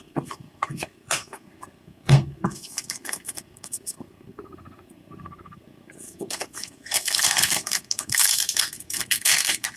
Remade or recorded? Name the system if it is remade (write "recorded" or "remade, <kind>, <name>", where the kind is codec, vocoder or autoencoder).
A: remade, codec, SNAC